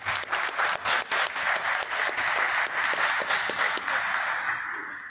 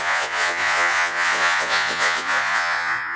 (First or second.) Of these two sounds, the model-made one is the second